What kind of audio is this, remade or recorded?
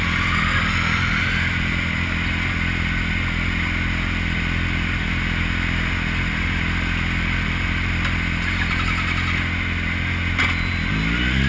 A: recorded